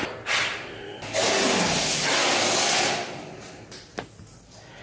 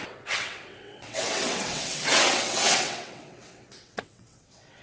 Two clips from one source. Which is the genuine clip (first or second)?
first